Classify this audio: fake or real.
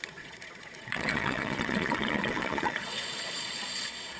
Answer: fake